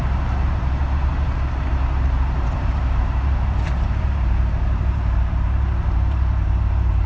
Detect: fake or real fake